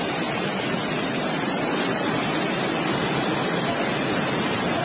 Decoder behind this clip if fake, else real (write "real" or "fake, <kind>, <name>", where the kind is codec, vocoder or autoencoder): real